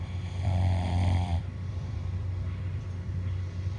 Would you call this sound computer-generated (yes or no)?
yes